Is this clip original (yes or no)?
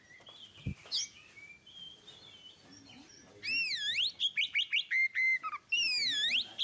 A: yes